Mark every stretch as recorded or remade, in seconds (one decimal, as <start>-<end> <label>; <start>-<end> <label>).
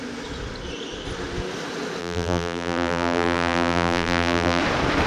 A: 0.0-2.0 recorded; 2.0-4.6 remade; 4.6-5.1 recorded